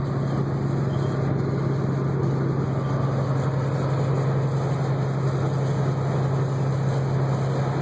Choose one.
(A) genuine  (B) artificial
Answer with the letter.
A